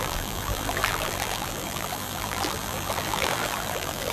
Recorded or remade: remade